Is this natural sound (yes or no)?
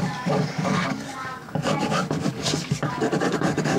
no